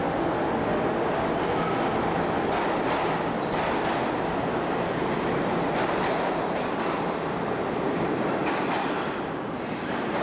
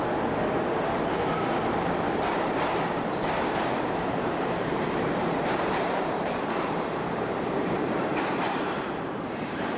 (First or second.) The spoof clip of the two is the second